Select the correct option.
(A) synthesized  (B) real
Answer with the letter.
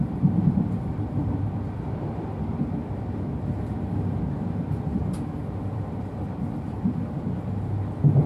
A